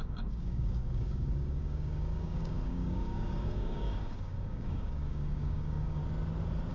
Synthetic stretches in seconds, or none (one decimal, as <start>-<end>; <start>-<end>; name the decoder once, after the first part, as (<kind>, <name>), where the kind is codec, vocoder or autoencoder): 0.0-6.0 (codec, DAC)